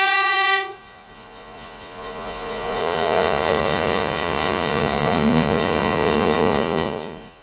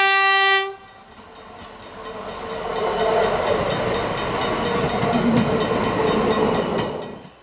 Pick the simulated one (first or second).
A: first